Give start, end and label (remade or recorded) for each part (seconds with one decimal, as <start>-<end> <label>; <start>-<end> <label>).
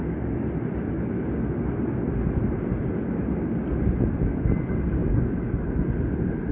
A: 0.0-6.5 recorded